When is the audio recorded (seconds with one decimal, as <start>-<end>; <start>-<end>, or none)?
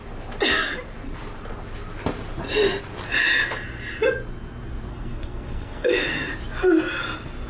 0.0-4.9; 6.3-7.5